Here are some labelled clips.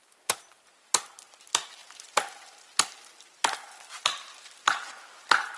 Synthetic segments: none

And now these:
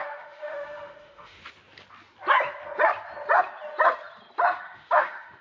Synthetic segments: 0.0-1.4; 4.6-5.4

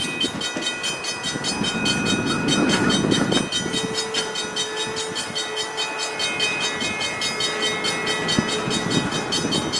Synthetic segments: none

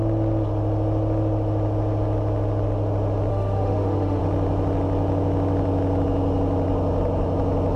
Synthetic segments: 3.3-4.2

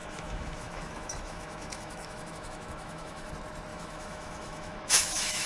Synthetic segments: 0.0-3.3; 3.7-5.5